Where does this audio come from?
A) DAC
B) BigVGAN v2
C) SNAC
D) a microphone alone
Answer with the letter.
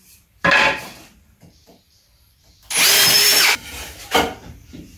B